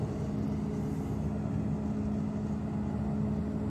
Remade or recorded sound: recorded